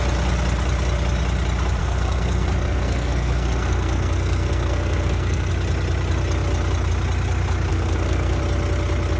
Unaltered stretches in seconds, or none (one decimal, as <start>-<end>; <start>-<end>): 0.0-1.8; 5.5-7.7; 8.4-9.2

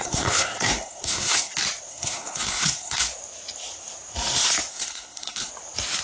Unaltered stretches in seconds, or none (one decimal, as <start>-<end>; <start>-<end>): 1.5-1.9; 3.1-4.7; 5.5-6.0

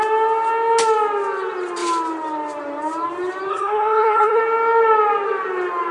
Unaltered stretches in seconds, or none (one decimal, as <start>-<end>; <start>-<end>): 0.0-3.5; 4.4-5.9